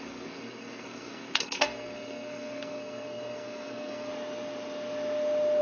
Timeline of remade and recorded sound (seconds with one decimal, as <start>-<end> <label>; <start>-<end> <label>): 0.0-4.1 remade; 4.1-5.6 recorded